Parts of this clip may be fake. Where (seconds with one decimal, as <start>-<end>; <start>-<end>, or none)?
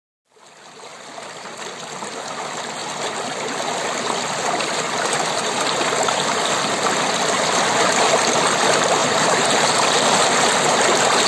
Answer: 9.0-9.5